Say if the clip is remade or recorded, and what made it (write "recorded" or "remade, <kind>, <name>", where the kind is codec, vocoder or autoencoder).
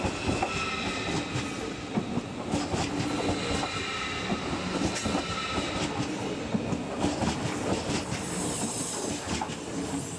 recorded